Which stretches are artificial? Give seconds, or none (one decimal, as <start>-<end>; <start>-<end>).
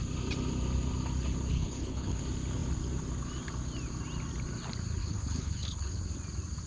1.5-2.2; 5.0-6.0